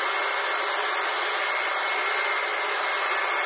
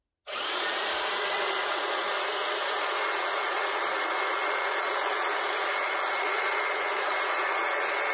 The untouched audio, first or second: first